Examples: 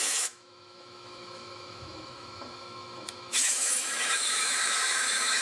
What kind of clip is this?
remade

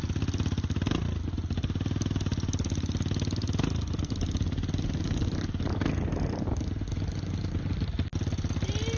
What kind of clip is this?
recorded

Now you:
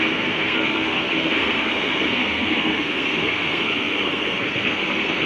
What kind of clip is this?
remade